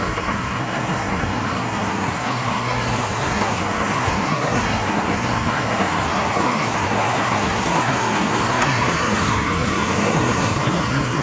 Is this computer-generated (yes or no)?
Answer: yes